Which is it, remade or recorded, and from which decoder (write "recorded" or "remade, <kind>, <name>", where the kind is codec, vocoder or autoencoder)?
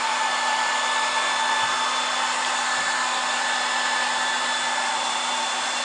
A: recorded